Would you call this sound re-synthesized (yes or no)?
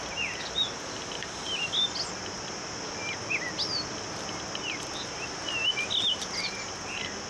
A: no